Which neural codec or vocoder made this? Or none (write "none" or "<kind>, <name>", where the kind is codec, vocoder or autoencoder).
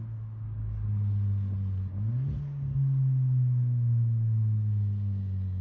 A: none